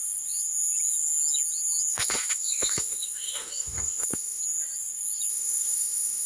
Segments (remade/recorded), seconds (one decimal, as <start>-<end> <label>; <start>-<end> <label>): 0.0-1.9 recorded; 1.9-4.4 remade; 4.4-5.3 recorded; 5.3-6.3 remade